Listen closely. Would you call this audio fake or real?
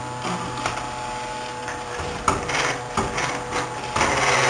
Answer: real